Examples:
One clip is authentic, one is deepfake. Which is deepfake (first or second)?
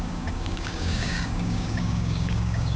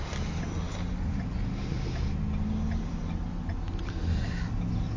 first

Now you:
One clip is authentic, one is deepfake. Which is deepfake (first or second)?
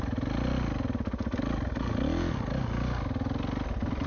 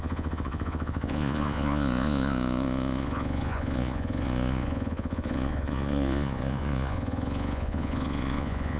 second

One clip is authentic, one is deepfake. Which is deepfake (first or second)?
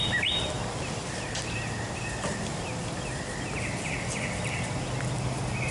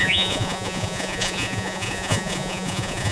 second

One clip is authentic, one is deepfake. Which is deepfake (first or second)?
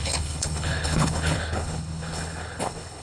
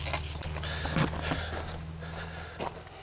first